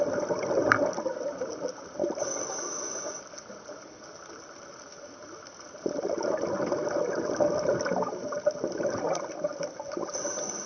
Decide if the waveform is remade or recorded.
recorded